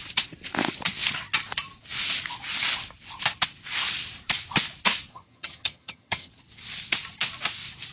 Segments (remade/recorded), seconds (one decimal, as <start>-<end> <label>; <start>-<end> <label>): 0.0-5.1 recorded; 5.1-6.3 remade; 6.3-7.9 recorded